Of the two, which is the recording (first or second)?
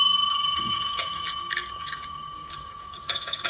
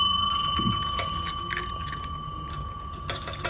second